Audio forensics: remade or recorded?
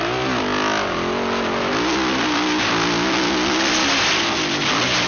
recorded